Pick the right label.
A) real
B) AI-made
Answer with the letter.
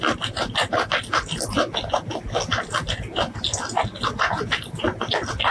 A